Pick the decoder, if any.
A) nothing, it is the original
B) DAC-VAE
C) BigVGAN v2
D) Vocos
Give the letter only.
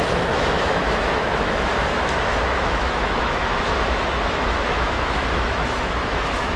B